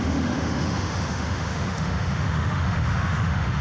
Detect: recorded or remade remade